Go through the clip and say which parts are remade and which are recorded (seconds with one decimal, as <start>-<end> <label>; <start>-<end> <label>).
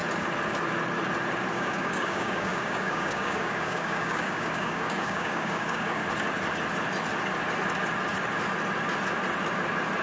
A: 0.0-1.5 recorded; 1.5-6.0 remade; 6.0-10.0 recorded